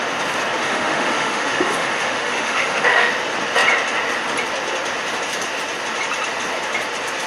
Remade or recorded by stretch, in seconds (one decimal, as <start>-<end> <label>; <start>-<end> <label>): 0.0-0.6 recorded; 0.6-3.1 remade; 3.1-7.3 recorded